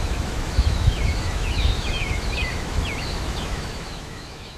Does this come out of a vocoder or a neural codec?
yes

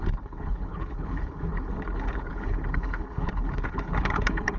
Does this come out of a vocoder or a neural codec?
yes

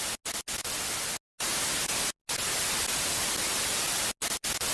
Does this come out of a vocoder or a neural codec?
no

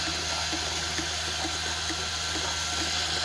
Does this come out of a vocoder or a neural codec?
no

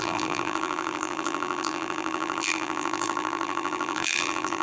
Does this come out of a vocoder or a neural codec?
yes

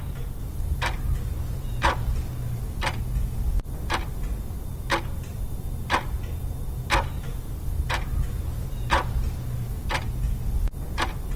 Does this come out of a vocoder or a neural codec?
no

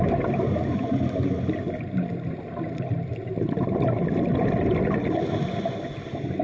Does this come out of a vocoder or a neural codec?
no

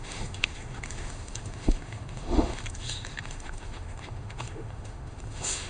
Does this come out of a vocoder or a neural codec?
yes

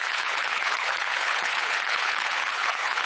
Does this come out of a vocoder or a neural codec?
yes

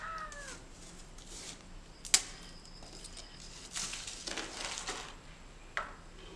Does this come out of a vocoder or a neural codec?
no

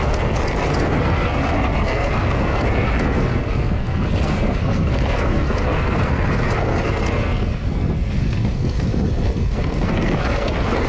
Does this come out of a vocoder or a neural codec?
yes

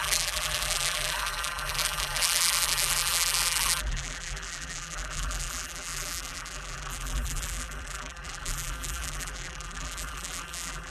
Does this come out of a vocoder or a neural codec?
yes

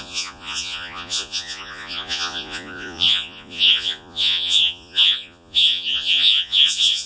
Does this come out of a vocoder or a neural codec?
yes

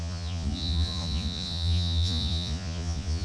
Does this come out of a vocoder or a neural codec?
yes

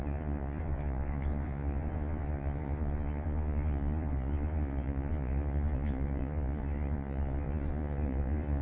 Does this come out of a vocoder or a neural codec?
yes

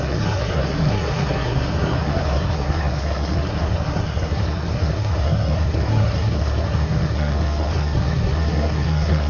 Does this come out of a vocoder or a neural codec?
yes